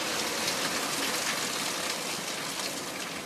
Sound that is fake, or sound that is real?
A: real